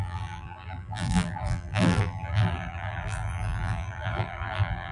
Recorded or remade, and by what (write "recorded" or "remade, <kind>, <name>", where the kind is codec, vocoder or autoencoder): remade, vocoder, BigVGAN v2